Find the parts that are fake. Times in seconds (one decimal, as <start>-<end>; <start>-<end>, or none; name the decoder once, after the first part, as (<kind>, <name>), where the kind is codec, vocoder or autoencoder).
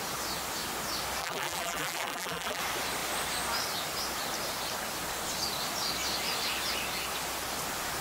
1.2-2.6 (vocoder, BigVGAN v2)